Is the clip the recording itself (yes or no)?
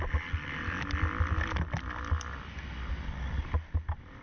yes